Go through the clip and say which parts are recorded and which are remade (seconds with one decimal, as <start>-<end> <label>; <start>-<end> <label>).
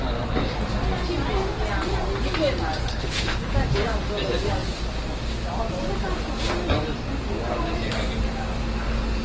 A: 0.0-2.9 recorded; 2.9-3.5 remade; 3.5-9.2 recorded